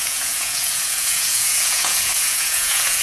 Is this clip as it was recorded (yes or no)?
no